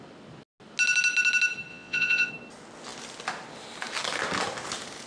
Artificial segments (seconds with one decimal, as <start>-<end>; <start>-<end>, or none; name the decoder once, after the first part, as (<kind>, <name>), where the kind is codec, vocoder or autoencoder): 1.7-2.3 (vocoder, Vocos)